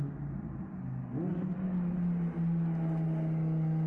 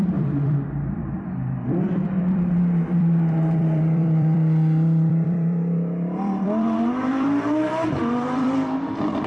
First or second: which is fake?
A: second